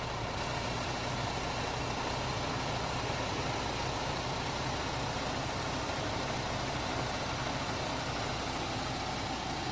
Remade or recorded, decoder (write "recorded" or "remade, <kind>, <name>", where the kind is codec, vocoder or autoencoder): recorded